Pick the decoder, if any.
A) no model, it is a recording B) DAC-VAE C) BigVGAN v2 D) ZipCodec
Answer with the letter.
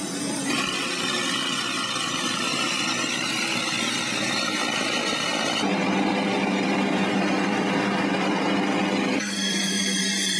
C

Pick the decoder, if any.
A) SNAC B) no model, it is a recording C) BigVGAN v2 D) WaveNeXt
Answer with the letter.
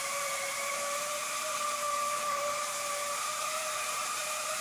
C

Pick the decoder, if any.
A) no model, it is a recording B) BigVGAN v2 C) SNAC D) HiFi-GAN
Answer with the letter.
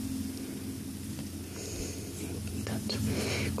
A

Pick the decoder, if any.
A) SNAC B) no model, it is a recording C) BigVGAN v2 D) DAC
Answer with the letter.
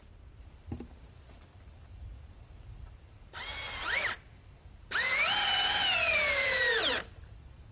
C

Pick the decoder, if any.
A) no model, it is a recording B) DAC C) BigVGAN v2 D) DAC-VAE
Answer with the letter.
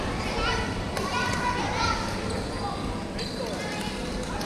A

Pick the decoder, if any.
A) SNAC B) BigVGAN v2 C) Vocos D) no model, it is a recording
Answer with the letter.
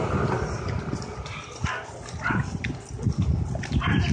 D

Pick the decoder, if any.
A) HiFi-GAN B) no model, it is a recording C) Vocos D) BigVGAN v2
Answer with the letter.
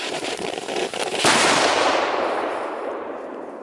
D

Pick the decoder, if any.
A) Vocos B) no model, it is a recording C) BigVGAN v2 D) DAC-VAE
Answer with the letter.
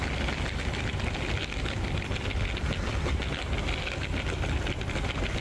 B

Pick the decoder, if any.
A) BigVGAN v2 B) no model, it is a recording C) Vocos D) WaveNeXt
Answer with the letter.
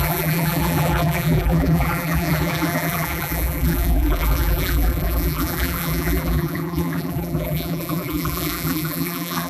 A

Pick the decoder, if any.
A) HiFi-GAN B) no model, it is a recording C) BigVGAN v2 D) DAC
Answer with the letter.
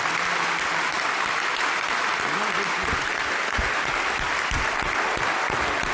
B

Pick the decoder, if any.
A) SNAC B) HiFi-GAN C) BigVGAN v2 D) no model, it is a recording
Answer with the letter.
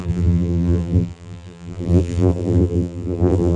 C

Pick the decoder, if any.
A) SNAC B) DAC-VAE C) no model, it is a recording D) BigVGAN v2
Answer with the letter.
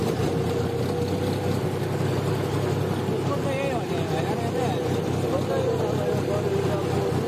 C